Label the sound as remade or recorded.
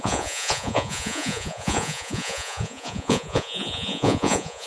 remade